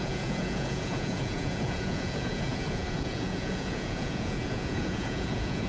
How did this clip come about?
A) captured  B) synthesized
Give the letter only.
B